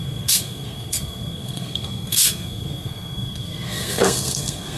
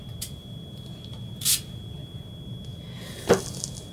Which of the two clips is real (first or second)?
second